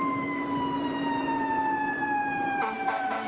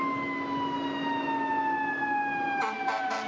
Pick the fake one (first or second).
first